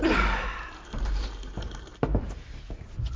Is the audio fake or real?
fake